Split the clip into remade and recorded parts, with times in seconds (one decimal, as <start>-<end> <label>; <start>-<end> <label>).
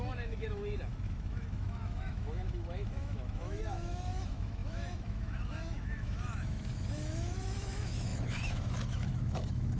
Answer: 0.0-9.8 remade